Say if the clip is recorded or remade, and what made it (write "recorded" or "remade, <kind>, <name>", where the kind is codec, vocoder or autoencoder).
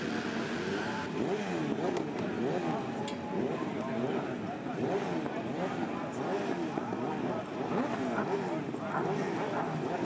recorded